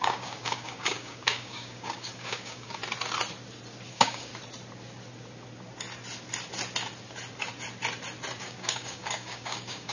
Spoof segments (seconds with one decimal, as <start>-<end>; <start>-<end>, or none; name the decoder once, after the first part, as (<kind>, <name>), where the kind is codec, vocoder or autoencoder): 0.0-2.8 (codec, DAC); 3.9-4.3; 8.4-9.9